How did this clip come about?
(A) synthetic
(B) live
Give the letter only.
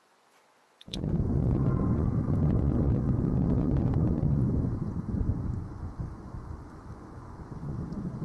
A